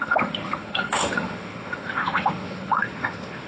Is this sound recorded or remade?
remade